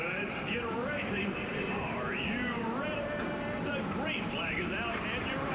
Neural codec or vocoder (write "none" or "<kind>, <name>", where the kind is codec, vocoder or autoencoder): vocoder, BigVGAN v2